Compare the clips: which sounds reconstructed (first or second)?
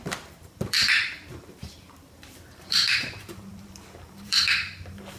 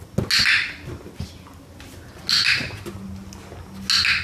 first